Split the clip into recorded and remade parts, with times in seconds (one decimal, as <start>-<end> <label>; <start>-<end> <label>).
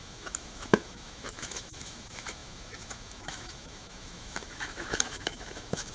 0.0-5.9 remade